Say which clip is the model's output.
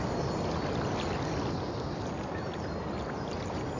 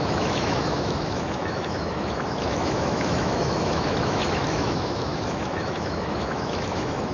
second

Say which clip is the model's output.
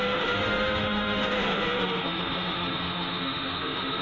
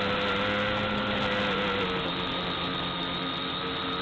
first